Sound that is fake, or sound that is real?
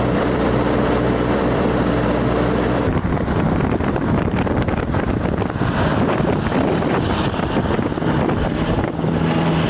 fake